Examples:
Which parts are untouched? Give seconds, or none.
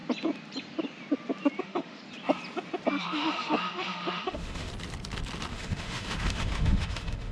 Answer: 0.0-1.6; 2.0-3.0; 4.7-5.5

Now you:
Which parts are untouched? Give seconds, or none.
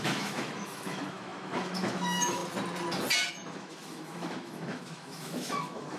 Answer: 2.4-3.3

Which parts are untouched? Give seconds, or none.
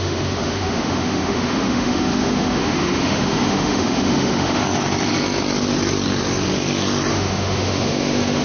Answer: 4.6-7.1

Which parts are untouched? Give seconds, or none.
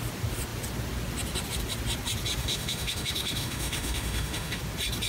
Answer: 0.0-2.4; 4.6-5.1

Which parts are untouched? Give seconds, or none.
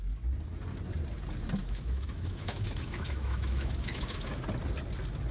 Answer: 0.0-1.6; 4.4-5.3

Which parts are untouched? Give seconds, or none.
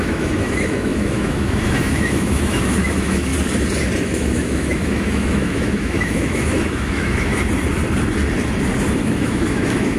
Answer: 3.3-4.0; 7.3-9.0